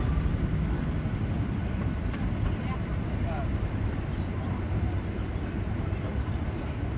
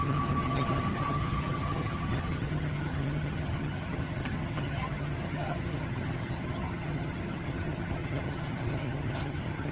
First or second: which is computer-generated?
second